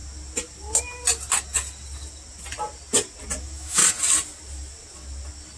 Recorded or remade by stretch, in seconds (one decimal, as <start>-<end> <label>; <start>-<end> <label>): 0.0-3.4 recorded; 3.4-3.8 remade; 3.8-5.6 recorded